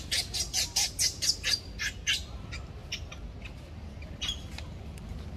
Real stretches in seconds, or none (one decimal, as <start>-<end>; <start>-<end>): 0.0-5.4